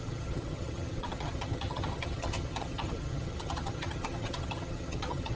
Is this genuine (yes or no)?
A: no